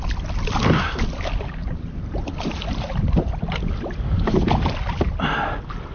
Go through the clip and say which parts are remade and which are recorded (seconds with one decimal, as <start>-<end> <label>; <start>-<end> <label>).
0.0-1.6 recorded; 1.6-3.9 remade; 3.9-5.9 recorded